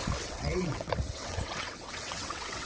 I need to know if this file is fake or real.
fake